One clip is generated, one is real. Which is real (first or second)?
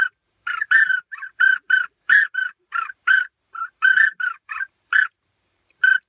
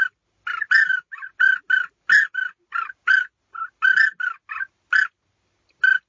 second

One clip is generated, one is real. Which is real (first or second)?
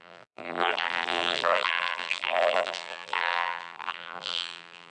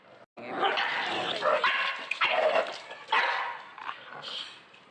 second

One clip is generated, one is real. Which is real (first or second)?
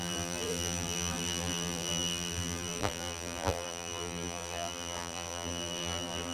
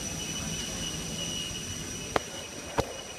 second